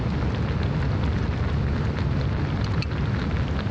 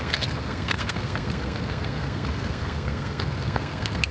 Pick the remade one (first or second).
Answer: second